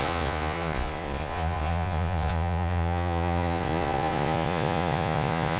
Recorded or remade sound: remade